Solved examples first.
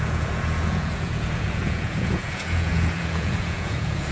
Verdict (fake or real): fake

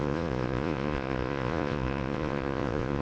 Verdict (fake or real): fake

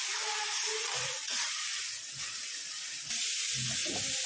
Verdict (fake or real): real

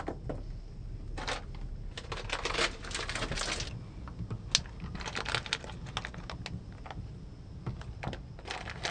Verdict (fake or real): real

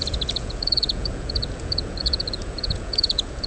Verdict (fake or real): fake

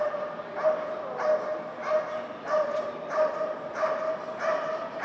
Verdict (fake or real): real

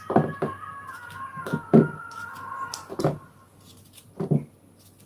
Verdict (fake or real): real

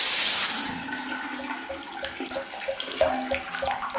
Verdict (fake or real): real